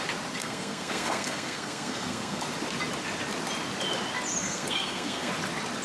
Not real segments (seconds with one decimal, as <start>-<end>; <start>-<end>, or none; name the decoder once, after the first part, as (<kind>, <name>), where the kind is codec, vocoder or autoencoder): 0.4-2.4 (codec, SNAC); 4.4-5.3